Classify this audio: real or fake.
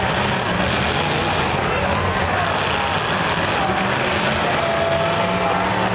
real